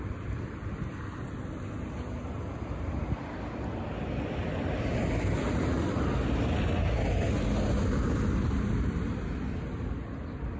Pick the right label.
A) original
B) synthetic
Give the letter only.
A